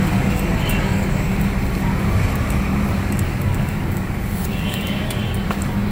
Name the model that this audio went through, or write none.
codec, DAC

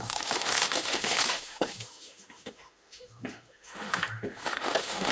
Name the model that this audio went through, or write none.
autoencoder, DAC-VAE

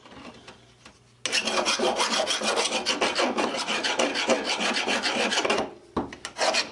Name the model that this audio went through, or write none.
none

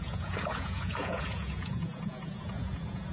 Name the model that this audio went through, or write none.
vocoder, Vocos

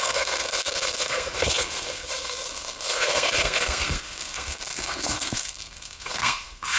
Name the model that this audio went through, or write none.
codec, SNAC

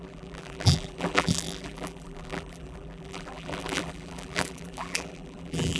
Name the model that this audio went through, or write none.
vocoder, BigVGAN v2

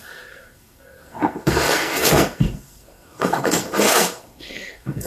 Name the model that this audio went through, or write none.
codec, SNAC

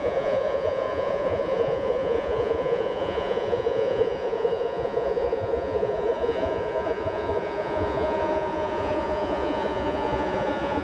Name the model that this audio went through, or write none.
vocoder, Vocos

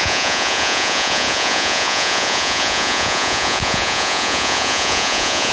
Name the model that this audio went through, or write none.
vocoder, Vocos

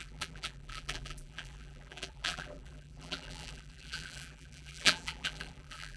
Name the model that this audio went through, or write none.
vocoder, BigVGAN v2